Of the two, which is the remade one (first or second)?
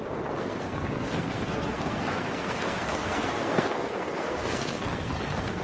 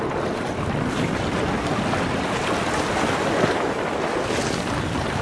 first